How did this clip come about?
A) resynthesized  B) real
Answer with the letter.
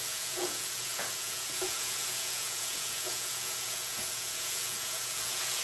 A